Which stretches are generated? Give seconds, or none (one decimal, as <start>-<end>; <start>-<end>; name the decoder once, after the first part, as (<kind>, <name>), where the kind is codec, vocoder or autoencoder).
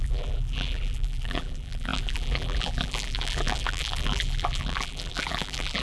0.0-5.8 (vocoder, BigVGAN v2)